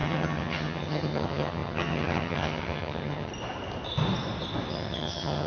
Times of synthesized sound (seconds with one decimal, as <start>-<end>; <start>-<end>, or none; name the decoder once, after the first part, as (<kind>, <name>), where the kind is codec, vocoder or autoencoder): 0.0-3.3 (vocoder, HiFi-GAN); 4.7-5.5